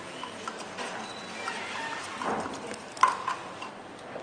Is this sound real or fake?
real